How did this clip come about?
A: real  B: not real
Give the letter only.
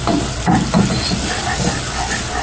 A